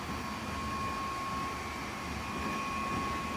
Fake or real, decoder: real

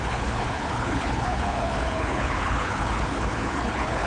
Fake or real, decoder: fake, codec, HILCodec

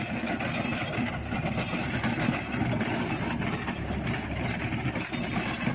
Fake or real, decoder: real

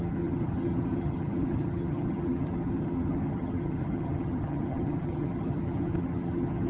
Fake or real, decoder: fake, vocoder, HiFi-GAN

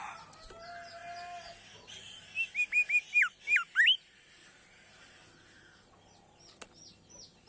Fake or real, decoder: real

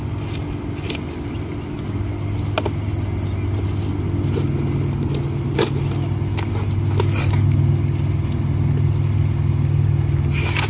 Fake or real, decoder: real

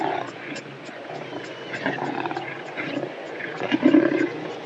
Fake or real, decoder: fake, vocoder, Vocos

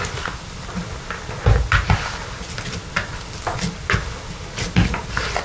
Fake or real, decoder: real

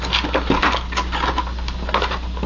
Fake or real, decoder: real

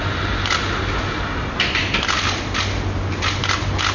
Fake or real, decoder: real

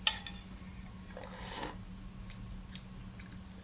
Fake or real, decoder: real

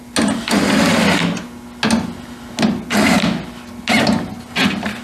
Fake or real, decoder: real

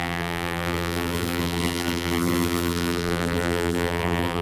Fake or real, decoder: fake, vocoder, BigVGAN v2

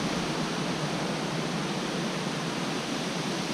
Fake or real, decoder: real